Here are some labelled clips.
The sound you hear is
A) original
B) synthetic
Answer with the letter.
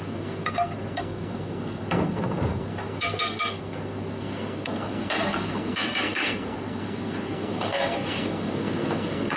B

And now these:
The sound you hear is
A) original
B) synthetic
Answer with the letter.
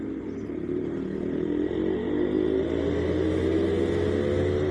A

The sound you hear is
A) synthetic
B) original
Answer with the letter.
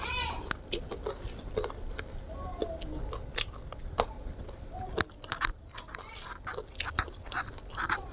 B